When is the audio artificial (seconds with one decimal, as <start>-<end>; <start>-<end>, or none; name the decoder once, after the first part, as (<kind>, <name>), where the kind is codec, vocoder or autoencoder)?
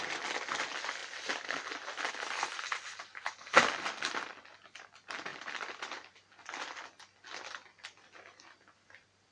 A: none